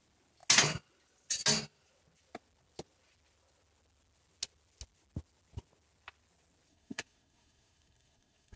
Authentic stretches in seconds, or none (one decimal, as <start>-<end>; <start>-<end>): 0.0-6.7